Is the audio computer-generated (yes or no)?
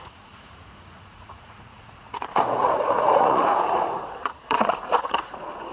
yes